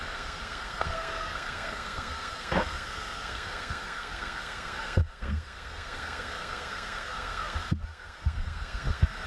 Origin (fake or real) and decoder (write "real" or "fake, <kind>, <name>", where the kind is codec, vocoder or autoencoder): fake, codec, SNAC